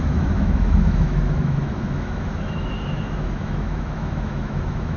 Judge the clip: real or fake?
fake